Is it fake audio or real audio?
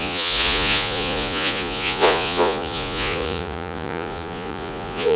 fake